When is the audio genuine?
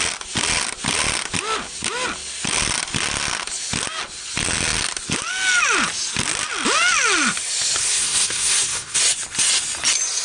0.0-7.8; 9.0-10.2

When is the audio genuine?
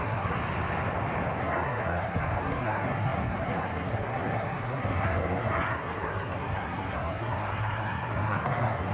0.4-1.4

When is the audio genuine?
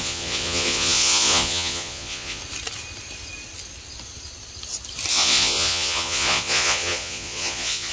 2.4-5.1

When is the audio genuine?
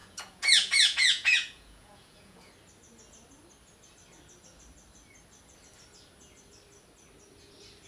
2.5-7.9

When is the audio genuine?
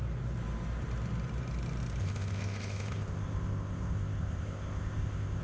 0.0-2.0